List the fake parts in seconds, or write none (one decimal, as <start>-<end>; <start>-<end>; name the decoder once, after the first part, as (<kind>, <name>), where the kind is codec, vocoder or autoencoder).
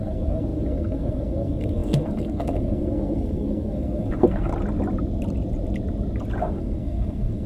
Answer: 0.0-4.5 (codec, SNAC); 6.4-7.5